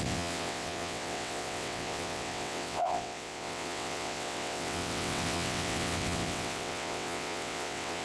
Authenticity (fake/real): fake